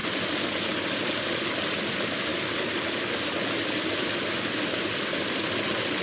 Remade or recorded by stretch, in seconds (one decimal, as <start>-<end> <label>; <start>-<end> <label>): 0.0-6.0 recorded